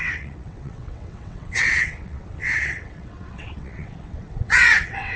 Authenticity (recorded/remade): remade